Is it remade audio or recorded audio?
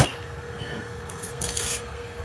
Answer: remade